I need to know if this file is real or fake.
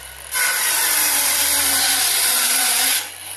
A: fake